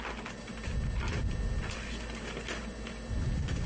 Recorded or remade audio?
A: recorded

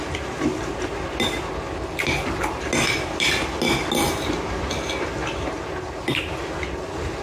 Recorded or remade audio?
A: recorded